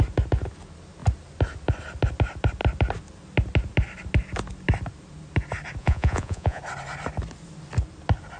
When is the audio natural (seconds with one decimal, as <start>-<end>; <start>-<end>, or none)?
0.0-5.8; 6.6-8.4